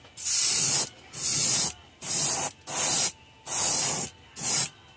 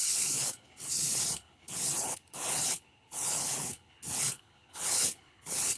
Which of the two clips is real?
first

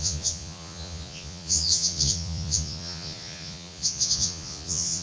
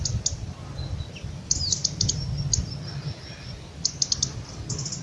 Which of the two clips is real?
second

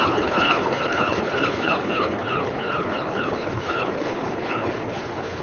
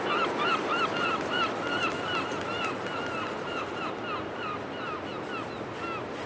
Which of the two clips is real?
second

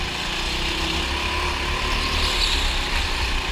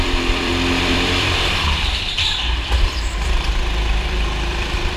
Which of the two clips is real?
first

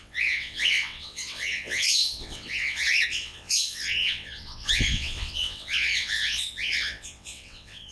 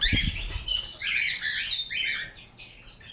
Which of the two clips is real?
second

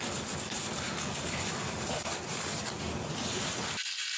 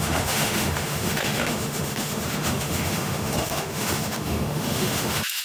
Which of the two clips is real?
first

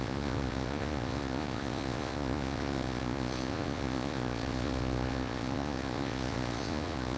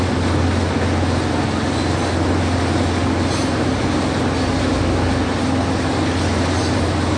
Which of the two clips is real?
second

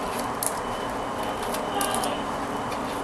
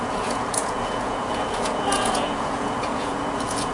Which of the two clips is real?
first